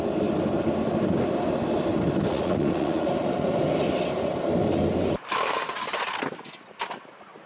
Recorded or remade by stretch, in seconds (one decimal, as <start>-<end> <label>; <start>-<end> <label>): 0.0-2.3 recorded; 2.3-3.1 remade; 3.1-7.5 recorded